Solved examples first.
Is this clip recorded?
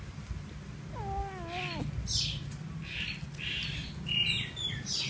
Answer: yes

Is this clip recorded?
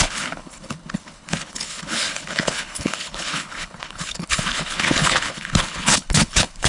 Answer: no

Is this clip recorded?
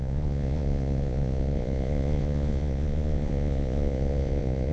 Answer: no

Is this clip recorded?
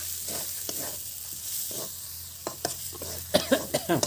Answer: yes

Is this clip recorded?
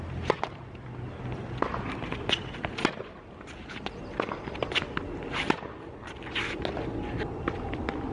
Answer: yes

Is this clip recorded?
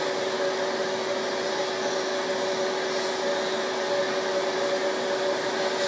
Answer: yes